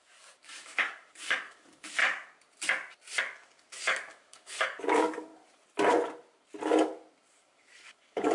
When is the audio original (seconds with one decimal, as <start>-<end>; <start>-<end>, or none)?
2.0-3.2; 5.3-7.3